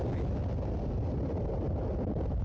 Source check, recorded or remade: recorded